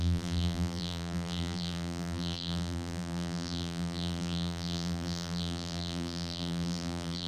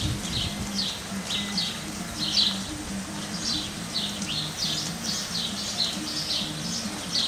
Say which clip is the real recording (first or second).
second